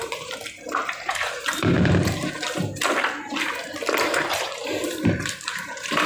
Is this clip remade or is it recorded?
remade